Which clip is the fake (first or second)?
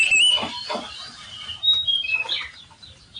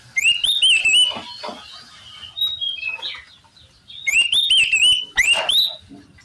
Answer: first